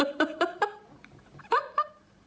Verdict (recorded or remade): remade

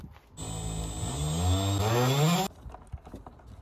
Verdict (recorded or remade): recorded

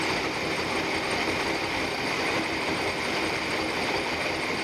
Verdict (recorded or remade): recorded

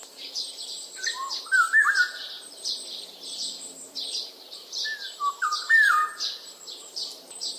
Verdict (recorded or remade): remade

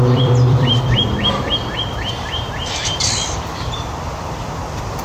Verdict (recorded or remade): remade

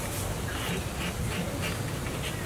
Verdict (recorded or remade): recorded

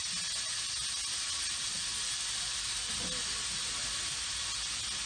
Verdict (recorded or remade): recorded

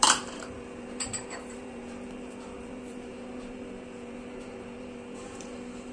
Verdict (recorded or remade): remade